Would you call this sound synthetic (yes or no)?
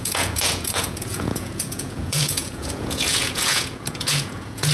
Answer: yes